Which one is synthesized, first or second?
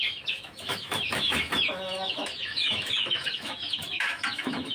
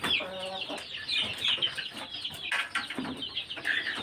first